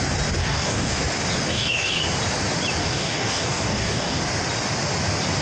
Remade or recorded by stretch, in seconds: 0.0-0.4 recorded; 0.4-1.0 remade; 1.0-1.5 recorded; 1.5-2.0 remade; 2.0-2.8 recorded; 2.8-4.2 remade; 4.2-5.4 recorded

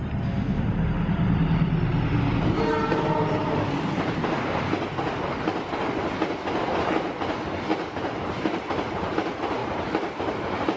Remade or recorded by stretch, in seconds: 0.0-3.4 recorded; 3.4-4.2 remade; 4.2-7.7 recorded; 7.7-9.0 remade; 9.0-9.6 recorded; 9.6-10.8 remade

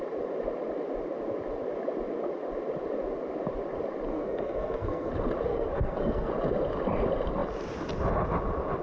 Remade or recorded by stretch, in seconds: 0.0-4.1 recorded; 4.1-5.1 remade; 5.1-5.5 recorded; 5.5-6.3 remade; 6.3-8.8 recorded